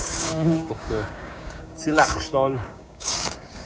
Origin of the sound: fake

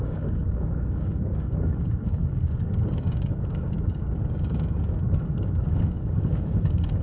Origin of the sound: fake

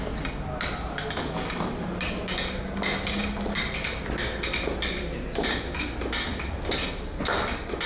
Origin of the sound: real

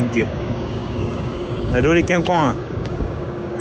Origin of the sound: fake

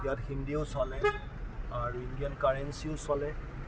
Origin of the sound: real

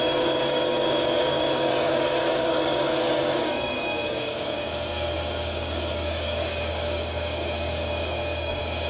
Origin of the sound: fake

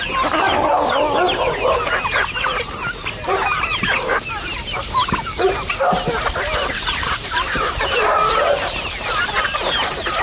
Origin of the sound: real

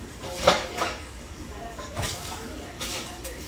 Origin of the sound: fake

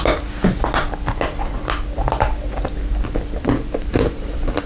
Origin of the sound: real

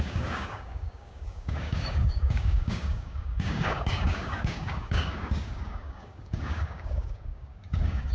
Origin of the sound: fake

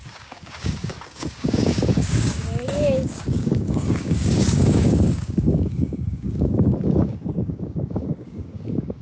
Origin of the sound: fake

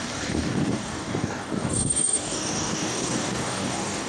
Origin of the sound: fake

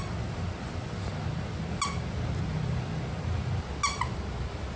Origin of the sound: real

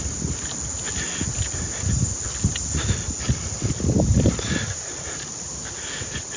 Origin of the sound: real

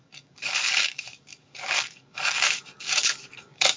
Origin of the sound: fake